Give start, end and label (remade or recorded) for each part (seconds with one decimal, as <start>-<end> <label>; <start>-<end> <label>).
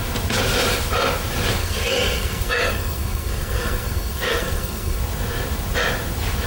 0.0-1.6 recorded; 1.6-5.0 remade; 5.0-6.5 recorded